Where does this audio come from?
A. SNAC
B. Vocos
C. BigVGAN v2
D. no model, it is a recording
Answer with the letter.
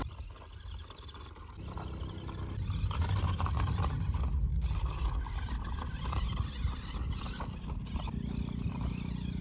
D